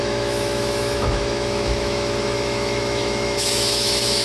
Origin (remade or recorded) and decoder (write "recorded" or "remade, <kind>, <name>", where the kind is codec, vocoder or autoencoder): remade, autoencoder, DAC-VAE